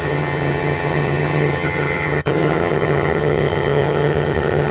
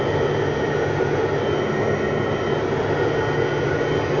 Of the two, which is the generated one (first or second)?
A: first